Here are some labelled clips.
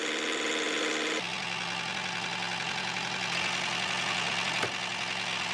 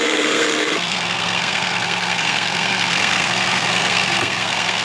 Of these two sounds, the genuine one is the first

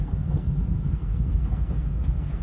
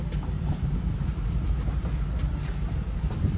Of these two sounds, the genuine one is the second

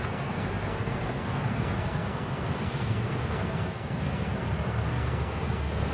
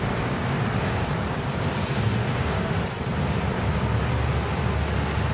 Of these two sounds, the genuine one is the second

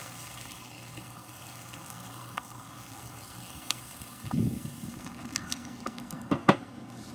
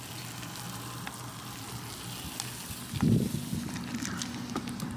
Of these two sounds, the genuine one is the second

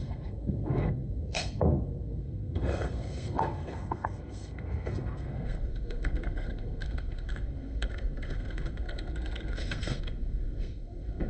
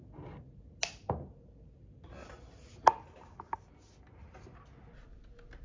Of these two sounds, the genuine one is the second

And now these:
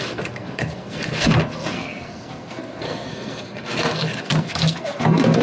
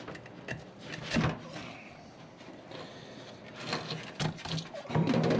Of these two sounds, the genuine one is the second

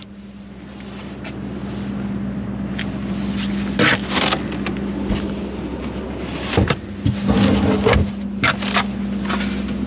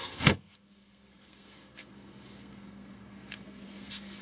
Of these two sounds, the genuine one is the first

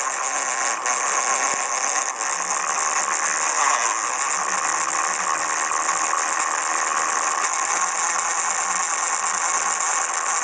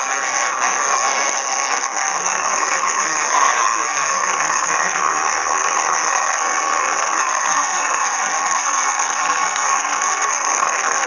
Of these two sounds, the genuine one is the first